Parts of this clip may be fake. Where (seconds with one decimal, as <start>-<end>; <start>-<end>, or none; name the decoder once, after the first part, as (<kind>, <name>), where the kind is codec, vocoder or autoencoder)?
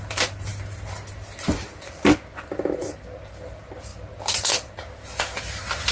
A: 0.5-2.9 (vocoder, BigVGAN v2)